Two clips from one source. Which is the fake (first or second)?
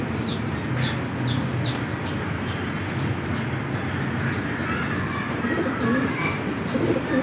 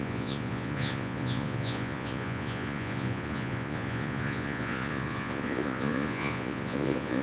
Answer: second